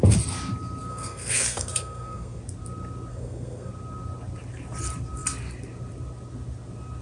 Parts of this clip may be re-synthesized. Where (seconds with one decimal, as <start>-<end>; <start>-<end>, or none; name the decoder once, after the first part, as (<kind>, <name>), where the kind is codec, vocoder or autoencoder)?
0.9-2.4 (codec, SNAC); 3.1-3.7